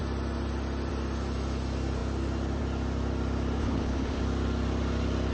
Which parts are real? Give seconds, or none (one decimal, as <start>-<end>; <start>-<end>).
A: 0.0-3.6; 4.2-5.3

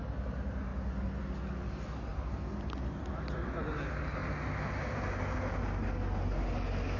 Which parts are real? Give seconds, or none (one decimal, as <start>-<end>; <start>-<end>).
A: 0.0-7.0

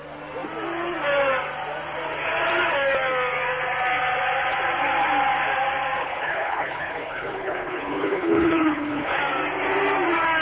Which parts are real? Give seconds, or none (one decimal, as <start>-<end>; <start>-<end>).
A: 0.0-6.0; 9.2-10.4

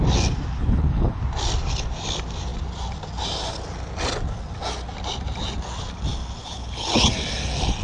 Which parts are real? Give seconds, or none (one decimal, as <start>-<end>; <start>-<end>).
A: 0.0-0.6; 1.2-6.4; 7.1-7.8

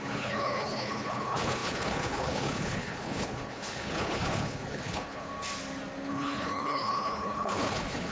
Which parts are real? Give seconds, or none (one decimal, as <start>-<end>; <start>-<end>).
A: 5.3-6.1

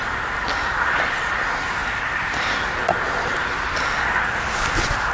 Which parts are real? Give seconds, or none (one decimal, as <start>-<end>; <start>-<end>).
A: 0.0-5.1